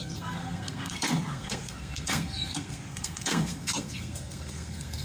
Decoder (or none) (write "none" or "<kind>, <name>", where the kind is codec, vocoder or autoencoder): codec, SNAC